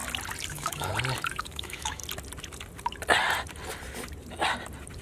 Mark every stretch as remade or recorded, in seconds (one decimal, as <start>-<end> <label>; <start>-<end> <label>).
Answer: 0.0-0.5 recorded; 0.5-0.9 remade; 0.9-1.4 recorded; 1.4-2.0 remade; 2.0-5.0 recorded